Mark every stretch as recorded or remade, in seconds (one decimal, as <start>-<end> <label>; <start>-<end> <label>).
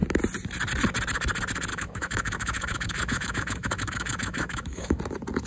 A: 0.0-1.7 recorded; 1.7-5.0 remade; 5.0-5.5 recorded